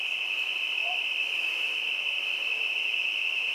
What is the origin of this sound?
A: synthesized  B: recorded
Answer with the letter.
B